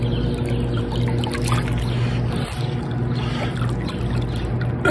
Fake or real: real